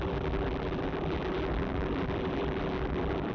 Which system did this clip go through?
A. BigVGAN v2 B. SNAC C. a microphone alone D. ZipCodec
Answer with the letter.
A